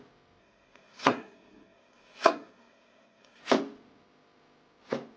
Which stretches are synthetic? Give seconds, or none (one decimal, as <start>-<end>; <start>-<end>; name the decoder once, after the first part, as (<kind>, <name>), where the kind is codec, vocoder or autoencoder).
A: 0.4-3.4 (codec, SNAC)